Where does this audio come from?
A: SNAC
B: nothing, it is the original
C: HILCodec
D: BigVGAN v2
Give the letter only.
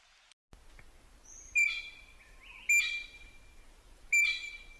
B